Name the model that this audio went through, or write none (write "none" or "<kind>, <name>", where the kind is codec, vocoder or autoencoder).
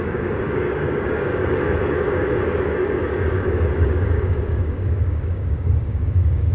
codec, DAC